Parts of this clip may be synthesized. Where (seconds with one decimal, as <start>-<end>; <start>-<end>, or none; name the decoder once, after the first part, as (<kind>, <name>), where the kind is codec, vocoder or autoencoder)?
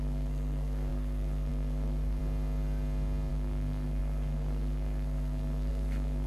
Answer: 0.0-2.2 (codec, SNAC); 3.3-6.3